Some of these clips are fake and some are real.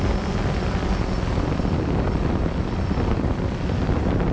real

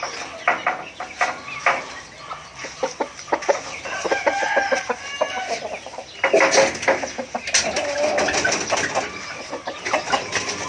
real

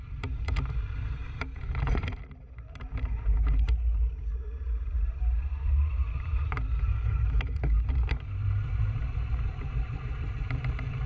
fake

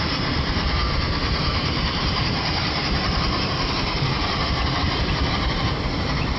fake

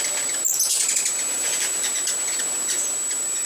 real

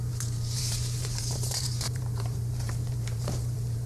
fake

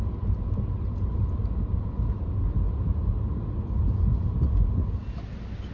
real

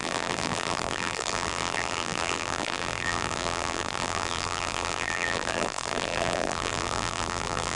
fake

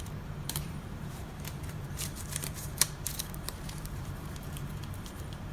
fake